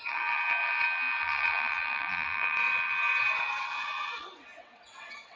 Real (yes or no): no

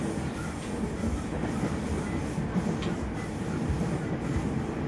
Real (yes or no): yes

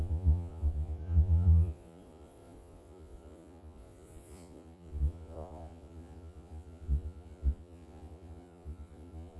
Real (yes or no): no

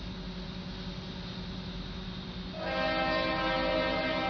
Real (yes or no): yes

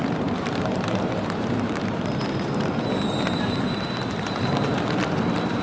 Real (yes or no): no